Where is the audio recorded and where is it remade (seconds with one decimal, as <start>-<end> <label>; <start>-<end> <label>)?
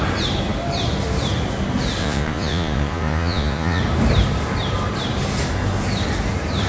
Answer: 0.0-2.0 recorded; 2.0-3.8 remade; 3.8-6.7 recorded